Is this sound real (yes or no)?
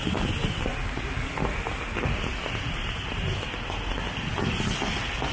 yes